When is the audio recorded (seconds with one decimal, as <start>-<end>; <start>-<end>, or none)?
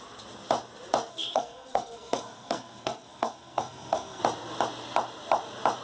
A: 0.0-1.1; 4.2-5.8